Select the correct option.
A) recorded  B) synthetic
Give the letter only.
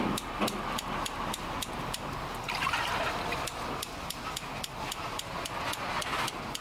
A